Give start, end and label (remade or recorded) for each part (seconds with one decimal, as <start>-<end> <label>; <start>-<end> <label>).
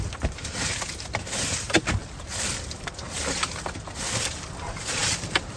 0.0-5.6 recorded